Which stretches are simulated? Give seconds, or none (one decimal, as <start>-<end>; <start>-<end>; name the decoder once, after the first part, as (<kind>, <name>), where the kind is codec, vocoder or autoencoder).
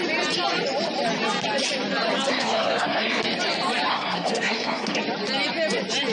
2.3-3.2 (codec, SNAC); 3.9-5.0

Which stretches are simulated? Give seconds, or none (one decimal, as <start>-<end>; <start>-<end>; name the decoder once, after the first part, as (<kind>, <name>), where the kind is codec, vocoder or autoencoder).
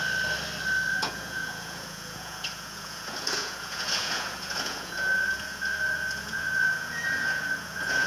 0.9-8.1 (vocoder, Vocos)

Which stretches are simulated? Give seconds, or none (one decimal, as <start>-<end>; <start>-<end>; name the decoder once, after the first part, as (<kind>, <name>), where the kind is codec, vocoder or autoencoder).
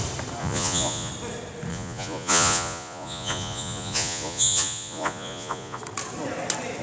0.4-1.1 (vocoder, Vocos); 1.7-5.8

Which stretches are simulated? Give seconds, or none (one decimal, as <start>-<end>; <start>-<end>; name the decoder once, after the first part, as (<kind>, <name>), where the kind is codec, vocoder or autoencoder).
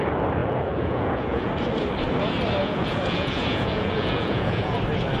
0.4-1.5 (vocoder, Vocos); 2.6-4.8